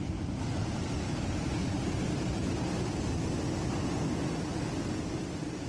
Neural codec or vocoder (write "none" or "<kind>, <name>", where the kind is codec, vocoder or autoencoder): none